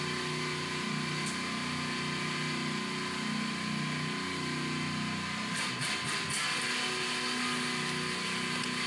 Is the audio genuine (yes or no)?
yes